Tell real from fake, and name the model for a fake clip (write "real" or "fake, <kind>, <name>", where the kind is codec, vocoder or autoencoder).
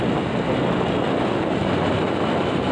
real